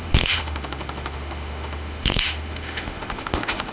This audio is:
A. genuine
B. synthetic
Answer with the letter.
B